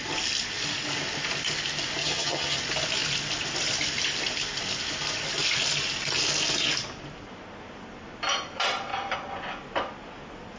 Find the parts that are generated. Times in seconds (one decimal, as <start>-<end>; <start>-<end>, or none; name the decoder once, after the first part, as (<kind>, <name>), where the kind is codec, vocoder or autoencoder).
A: 2.0-2.6 (vocoder, HiFi-GAN)